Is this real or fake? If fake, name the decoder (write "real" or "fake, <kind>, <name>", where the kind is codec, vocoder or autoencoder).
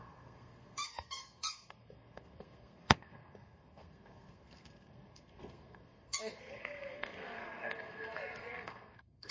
fake, codec, SNAC